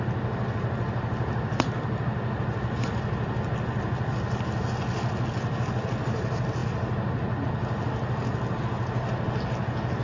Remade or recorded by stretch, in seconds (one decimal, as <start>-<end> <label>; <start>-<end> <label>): 0.0-10.0 recorded